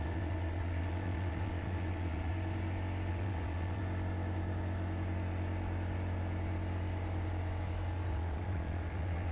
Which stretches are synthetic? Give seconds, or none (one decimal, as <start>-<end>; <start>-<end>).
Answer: 0.0-2.3; 3.1-3.8; 8.1-9.3